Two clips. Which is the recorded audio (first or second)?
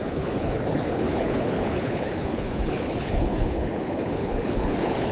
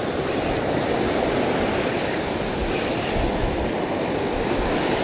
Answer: second